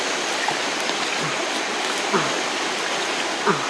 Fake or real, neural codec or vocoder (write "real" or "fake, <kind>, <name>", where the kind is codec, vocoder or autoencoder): real